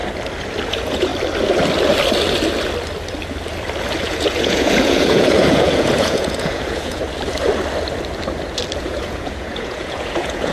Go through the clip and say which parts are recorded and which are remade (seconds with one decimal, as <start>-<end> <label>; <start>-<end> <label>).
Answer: 0.0-0.7 recorded; 0.7-1.1 remade; 1.1-4.0 recorded; 4.0-7.0 remade; 7.0-8.8 recorded; 8.8-10.5 remade